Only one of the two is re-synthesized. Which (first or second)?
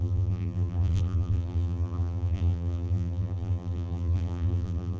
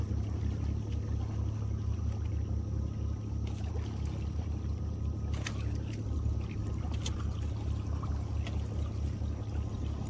first